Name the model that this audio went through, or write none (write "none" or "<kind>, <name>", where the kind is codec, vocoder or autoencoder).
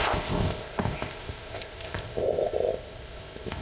codec, ZipCodec